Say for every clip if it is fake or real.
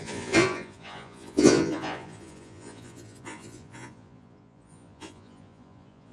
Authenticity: fake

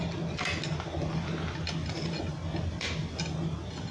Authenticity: real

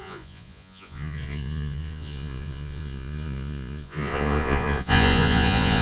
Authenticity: fake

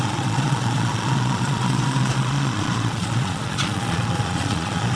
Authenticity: fake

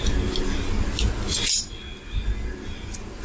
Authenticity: real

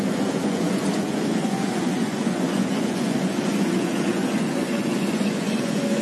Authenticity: fake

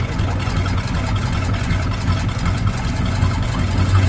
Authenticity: fake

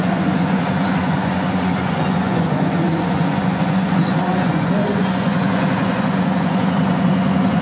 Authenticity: fake